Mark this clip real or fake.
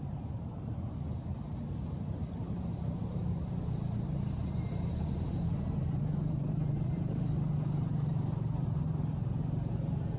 fake